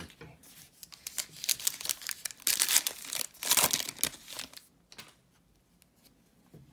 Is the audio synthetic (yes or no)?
no